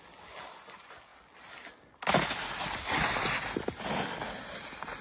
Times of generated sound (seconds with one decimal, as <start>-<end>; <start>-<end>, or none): none

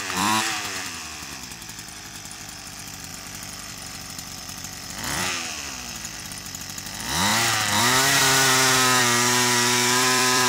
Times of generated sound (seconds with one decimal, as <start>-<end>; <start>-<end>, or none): 0.0-8.2; 9.0-10.5

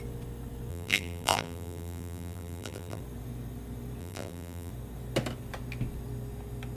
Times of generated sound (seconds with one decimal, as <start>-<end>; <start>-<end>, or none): 0.7-3.0; 4.0-4.7

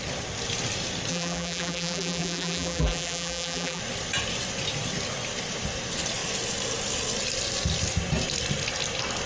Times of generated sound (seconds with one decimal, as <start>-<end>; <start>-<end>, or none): 1.1-3.8

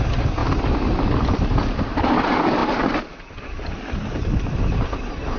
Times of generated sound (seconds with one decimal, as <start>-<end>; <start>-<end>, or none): 0.4-2.1; 2.6-4.6

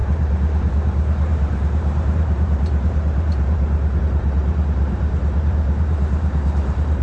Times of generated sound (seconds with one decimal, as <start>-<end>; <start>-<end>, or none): 0.0-7.0